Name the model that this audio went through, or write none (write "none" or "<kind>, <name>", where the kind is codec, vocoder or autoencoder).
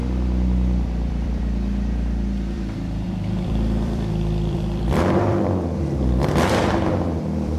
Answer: vocoder, BigVGAN v2